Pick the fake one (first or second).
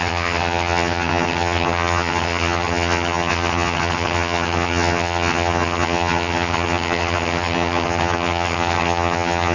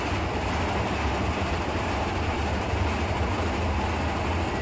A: first